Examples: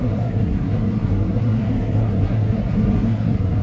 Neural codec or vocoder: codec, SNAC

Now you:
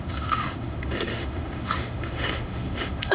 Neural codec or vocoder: autoencoder, DAC-VAE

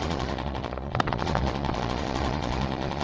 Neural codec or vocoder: vocoder, Vocos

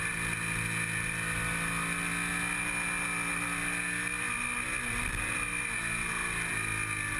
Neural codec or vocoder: none